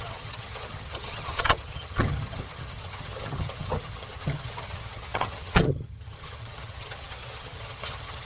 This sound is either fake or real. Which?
fake